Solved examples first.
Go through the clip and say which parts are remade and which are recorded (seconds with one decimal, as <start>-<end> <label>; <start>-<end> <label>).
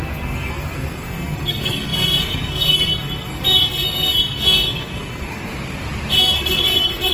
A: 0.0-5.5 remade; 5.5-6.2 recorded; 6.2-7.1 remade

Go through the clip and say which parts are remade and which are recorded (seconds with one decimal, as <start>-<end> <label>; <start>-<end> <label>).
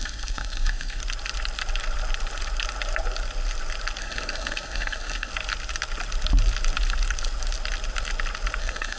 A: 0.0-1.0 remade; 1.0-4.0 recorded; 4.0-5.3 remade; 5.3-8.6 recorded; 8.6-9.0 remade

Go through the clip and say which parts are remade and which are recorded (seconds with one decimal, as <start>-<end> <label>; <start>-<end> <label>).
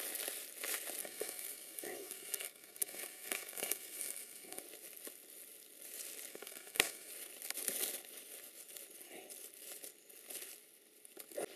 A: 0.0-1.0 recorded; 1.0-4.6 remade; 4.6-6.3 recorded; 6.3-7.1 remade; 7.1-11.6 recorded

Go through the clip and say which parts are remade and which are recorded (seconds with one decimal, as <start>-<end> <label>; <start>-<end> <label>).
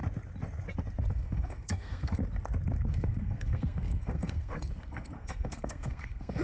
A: 0.0-1.1 recorded; 1.1-2.2 remade; 2.2-2.9 recorded; 2.9-6.4 remade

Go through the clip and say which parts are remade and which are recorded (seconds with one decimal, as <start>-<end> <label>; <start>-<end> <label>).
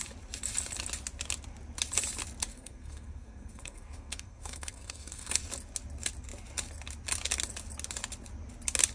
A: 0.0-2.5 recorded; 2.5-5.4 remade; 5.4-8.9 recorded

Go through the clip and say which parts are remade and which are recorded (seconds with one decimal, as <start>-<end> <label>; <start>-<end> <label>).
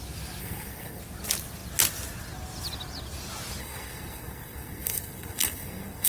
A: 0.0-0.4 recorded; 0.4-1.0 remade; 1.0-3.6 recorded; 3.6-6.1 remade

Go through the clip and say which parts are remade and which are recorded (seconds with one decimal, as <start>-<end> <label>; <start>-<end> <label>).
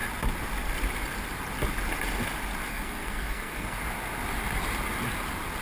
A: 0.0-2.7 recorded; 2.7-3.8 remade; 3.8-5.6 recorded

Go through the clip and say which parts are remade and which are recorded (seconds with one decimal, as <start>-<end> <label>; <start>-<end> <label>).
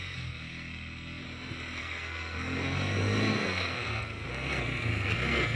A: 0.0-1.2 remade; 1.2-1.8 recorded; 1.8-5.6 remade